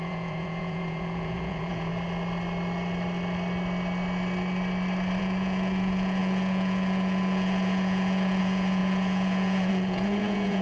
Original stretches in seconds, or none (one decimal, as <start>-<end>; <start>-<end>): 1.9-5.2